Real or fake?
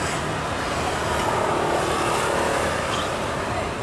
real